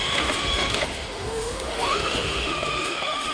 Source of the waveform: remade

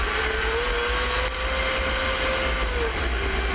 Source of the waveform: recorded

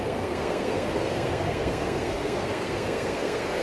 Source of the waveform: remade